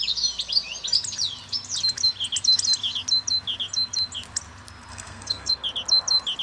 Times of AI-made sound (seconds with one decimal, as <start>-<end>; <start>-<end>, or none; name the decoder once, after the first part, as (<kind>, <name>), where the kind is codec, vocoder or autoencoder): 4.9-5.5 (codec, SNAC)